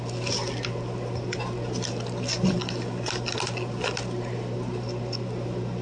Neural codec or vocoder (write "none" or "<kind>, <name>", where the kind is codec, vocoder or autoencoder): none